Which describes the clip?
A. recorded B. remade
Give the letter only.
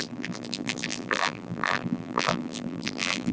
B